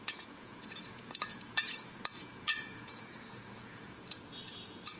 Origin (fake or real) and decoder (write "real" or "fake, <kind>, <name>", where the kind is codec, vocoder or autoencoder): fake, vocoder, Vocos